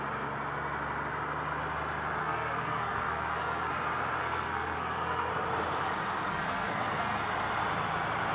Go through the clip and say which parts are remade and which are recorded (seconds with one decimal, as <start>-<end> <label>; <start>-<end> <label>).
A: 0.0-2.2 recorded; 2.2-3.7 remade; 3.7-4.2 recorded; 4.2-5.3 remade; 5.3-6.3 recorded; 6.3-7.2 remade; 7.2-8.3 recorded